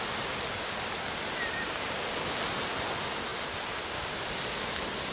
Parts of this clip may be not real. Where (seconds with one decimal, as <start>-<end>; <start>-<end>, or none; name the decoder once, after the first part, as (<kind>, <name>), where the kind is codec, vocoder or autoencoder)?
none